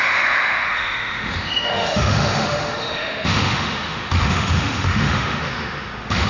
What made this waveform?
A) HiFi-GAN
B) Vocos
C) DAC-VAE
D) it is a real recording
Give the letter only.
C